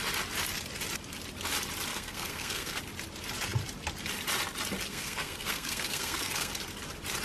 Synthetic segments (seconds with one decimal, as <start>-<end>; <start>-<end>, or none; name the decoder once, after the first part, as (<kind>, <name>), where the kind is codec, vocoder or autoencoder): 1.9-2.8 (codec, SNAC); 4.9-6.5